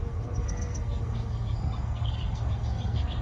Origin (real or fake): fake